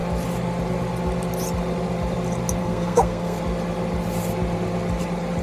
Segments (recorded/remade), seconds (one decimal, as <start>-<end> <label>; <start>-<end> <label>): 0.0-2.6 recorded; 2.6-3.4 remade; 3.4-5.4 recorded